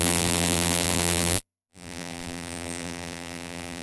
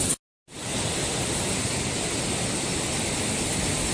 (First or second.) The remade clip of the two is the first